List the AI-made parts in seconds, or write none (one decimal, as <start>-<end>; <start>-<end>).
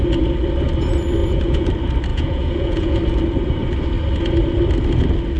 1.2-1.7; 2.1-3.0